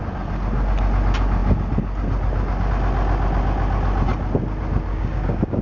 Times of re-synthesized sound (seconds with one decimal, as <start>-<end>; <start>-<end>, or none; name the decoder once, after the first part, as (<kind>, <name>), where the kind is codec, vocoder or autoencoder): 4.9-5.6 (codec, DAC)